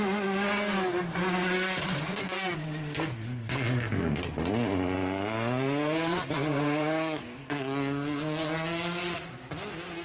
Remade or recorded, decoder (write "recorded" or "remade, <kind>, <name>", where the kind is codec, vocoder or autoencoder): recorded